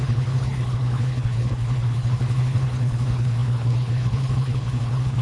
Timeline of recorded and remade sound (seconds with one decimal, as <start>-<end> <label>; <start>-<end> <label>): 0.0-5.2 remade